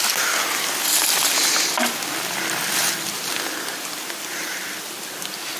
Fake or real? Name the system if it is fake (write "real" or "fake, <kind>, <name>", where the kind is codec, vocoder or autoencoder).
real